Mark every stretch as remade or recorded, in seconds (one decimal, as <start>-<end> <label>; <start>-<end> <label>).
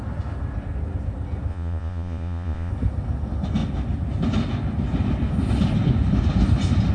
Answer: 0.0-1.5 recorded; 1.5-2.7 remade; 2.7-6.9 recorded